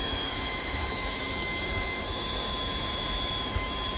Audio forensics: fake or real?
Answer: fake